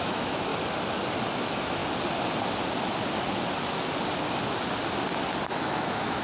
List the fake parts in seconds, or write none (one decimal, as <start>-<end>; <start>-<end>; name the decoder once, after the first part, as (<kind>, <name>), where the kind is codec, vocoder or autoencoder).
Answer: 0.0-0.5 (autoencoder, DAC-VAE); 1.4-1.8; 5.5-6.2